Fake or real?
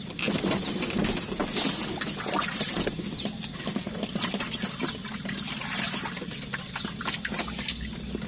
real